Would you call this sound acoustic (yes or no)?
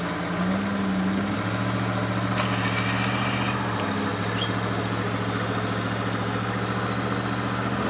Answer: yes